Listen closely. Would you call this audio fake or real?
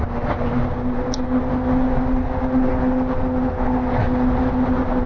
real